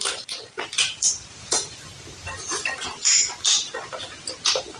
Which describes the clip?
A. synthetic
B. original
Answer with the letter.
A